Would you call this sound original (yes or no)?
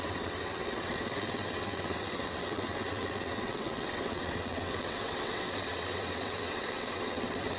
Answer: no